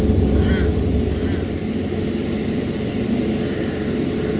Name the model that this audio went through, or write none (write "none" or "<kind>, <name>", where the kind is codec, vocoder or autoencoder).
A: none